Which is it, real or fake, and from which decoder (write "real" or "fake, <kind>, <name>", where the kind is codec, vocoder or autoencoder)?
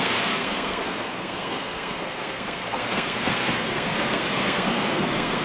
fake, codec, SNAC